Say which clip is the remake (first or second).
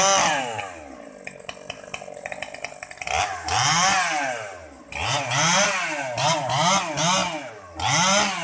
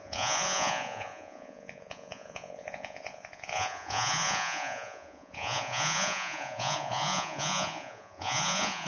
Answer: second